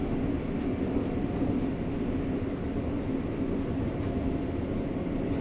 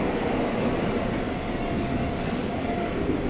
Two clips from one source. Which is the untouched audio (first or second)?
first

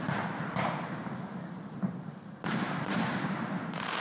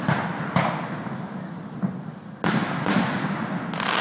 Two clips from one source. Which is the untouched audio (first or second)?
second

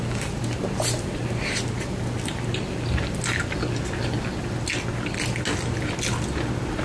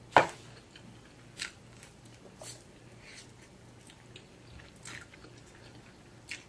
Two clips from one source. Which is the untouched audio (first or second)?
first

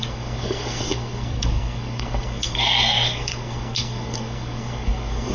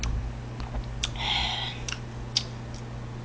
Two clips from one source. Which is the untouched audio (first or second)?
second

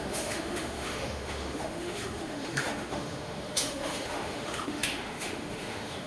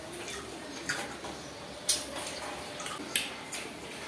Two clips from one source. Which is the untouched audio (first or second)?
second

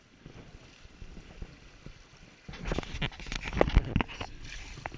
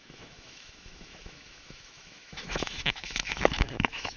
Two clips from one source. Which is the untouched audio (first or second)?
first